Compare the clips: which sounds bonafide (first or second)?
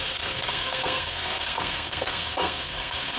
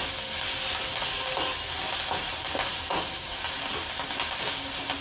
second